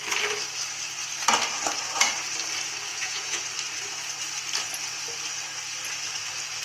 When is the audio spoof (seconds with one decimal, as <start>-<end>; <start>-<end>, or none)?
2.9-3.4